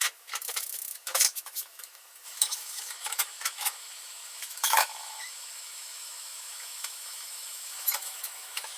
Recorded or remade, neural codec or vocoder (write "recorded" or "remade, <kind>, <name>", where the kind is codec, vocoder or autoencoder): remade, autoencoder, DAC-VAE